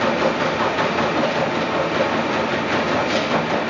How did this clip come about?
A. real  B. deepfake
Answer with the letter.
A